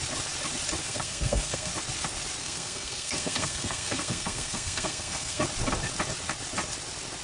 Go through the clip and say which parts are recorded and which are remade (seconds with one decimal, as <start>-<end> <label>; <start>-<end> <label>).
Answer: 0.0-0.8 recorded; 0.8-1.7 remade; 1.7-2.4 recorded; 2.4-5.4 remade; 5.4-7.2 recorded